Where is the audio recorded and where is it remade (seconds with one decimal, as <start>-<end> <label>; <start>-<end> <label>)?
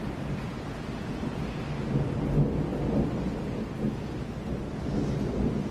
0.0-5.7 recorded